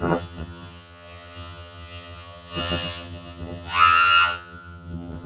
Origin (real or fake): fake